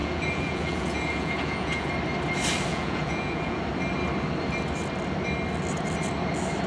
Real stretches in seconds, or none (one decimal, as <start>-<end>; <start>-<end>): 1.9-2.7; 3.6-6.7